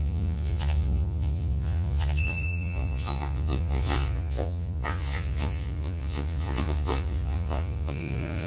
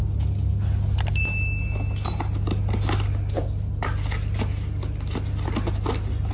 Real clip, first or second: second